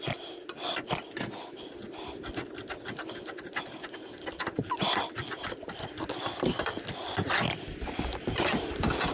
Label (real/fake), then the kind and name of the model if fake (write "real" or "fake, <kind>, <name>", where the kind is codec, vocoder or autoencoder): real